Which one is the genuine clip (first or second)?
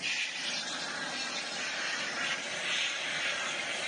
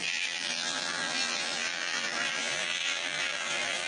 first